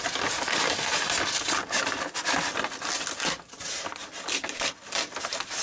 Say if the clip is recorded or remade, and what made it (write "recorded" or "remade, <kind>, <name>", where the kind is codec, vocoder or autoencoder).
recorded